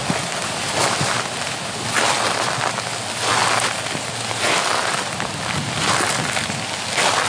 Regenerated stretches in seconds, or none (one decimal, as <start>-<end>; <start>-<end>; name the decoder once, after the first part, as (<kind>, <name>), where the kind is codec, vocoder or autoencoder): none